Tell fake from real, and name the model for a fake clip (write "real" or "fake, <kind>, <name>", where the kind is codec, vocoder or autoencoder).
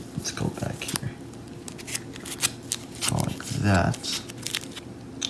real